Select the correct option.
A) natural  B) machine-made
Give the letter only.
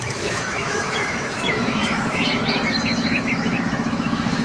B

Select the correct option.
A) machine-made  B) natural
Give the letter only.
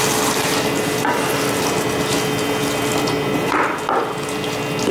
B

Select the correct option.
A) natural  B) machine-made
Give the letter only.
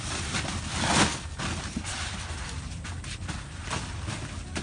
A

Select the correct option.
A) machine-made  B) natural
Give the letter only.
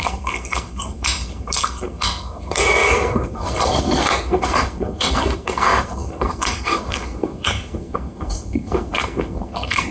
A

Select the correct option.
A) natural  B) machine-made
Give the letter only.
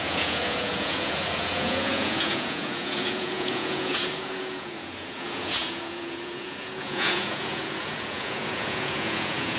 B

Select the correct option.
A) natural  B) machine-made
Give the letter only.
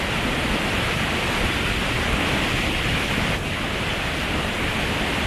B